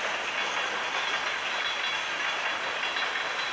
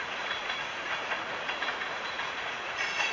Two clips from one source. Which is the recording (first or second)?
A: first